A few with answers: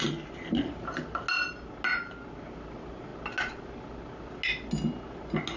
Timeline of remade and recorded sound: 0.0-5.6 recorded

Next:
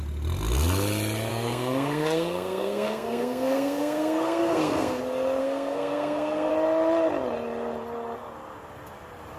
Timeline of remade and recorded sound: 0.0-1.3 recorded; 1.3-5.0 remade; 5.0-5.4 recorded; 5.4-6.5 remade; 6.5-9.4 recorded

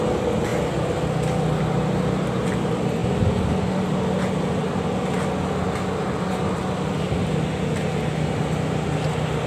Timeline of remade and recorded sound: 0.0-9.5 recorded

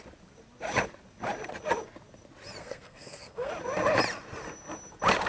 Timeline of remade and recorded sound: 0.0-2.6 recorded; 2.6-3.5 remade; 3.5-5.3 recorded